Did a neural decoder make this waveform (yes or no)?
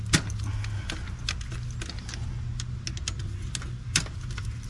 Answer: no